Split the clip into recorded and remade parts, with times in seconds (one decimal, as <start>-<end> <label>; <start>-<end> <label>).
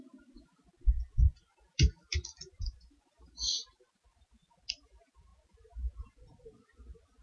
0.0-7.2 recorded